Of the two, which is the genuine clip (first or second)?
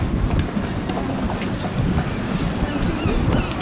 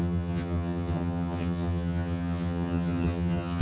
first